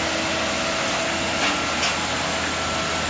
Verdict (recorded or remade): recorded